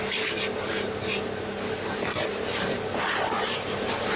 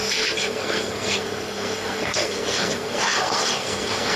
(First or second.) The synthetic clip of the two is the second